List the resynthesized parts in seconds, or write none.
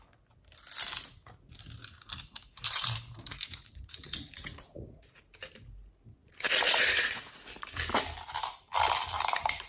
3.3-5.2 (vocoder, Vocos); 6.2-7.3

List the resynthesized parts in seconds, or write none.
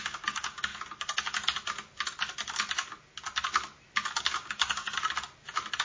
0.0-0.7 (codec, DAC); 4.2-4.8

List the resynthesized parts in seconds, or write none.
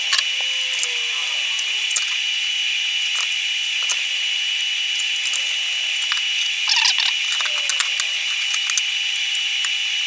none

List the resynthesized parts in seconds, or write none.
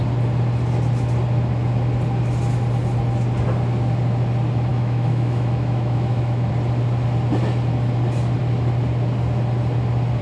4.7-6.5 (autoencoder, DAC-VAE)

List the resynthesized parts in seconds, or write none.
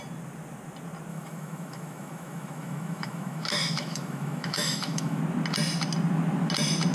1.1-5.2 (autoencoder, DAC-VAE)